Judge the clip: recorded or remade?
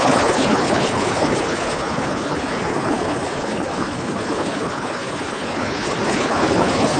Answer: remade